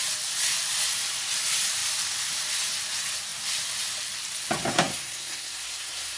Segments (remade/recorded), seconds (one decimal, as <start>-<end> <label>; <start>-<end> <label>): 0.0-4.7 recorded; 4.7-6.2 remade